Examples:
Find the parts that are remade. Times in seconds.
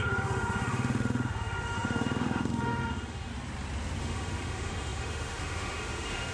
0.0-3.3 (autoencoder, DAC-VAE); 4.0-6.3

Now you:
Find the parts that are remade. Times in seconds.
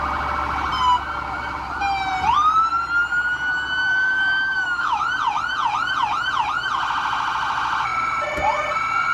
3.8-5.0 (autoencoder, DAC-VAE)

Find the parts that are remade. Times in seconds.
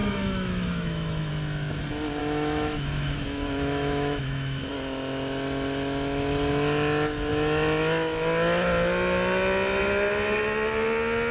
0.0-1.3 (autoencoder, DAC-VAE); 2.2-4.7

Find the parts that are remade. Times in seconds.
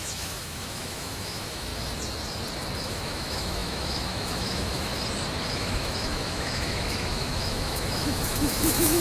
0.0-1.7 (autoencoder, DAC-VAE); 2.8-4.9; 5.5-9.0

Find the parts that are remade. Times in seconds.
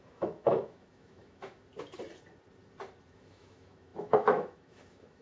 0.0-1.7 (autoencoder, DAC-VAE); 3.1-5.2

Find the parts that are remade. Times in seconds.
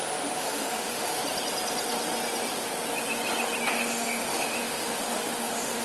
0.0-1.2 (autoencoder, DAC-VAE); 3.7-5.8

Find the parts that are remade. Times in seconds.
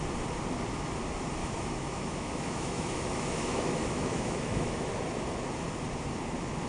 1.4-4.9 (autoencoder, DAC-VAE)